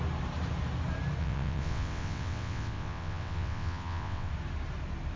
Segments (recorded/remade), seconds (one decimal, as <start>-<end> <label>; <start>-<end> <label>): 0.0-1.2 recorded; 1.2-4.3 remade; 4.3-5.2 recorded

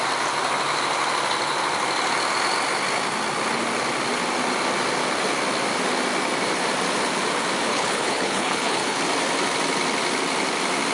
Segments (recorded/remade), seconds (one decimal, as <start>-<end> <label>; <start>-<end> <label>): 0.0-7.7 recorded; 7.7-9.0 remade; 9.0-10.9 recorded